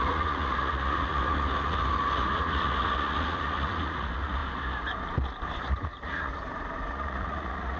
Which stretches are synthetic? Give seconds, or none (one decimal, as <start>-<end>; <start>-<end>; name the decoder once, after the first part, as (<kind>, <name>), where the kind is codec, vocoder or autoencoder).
0.0-4.4 (vocoder, Vocos); 5.6-6.3; 6.9-7.8